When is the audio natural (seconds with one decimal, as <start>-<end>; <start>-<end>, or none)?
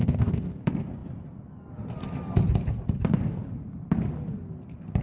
0.6-5.0